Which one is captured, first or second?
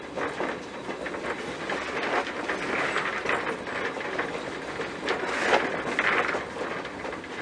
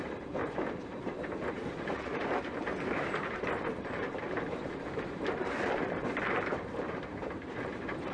first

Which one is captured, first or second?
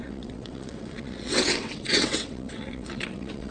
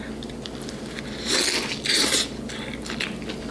second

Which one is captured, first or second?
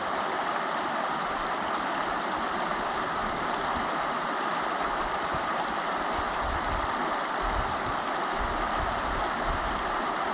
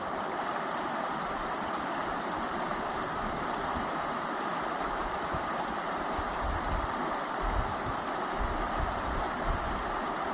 first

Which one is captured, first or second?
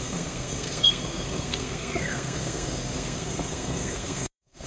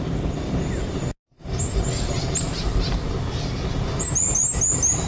second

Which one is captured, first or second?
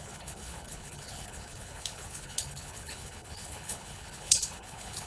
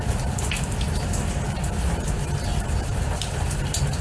second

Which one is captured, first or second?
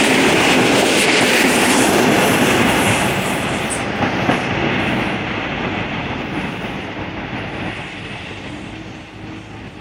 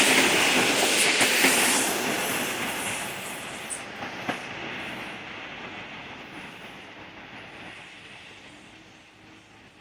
second